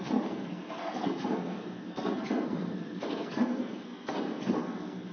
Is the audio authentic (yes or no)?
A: no